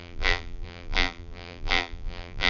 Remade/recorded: remade